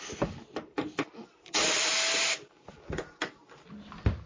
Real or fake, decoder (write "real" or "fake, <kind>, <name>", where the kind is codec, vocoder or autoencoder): real